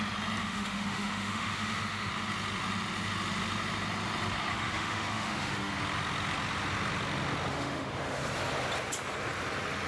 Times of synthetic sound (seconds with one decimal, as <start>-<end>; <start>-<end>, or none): 0.4-2.1; 4.5-5.7; 7.5-8.2